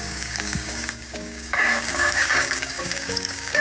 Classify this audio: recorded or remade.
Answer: remade